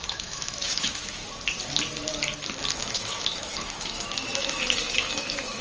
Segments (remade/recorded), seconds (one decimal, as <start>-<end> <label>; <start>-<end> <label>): 0.0-1.2 remade; 1.2-2.8 recorded; 2.8-5.6 remade